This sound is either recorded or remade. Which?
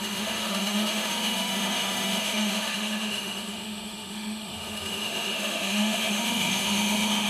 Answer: remade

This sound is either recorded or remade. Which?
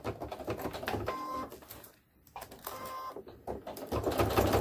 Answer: recorded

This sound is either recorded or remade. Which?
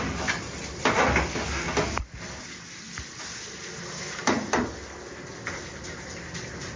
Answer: recorded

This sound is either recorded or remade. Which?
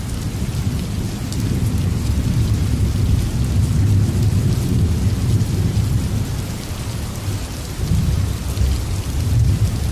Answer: recorded